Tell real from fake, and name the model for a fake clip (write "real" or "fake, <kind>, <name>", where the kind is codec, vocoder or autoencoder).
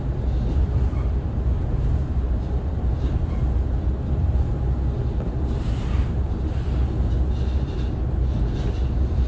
real